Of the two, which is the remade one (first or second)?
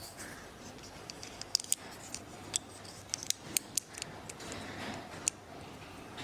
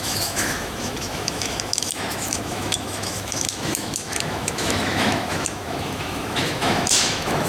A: second